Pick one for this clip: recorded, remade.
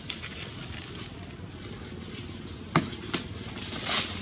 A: recorded